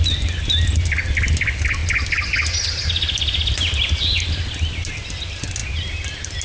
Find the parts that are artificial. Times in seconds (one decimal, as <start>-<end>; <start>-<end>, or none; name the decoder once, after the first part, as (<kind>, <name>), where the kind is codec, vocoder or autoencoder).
none